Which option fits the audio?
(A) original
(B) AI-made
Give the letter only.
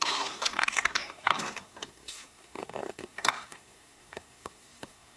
B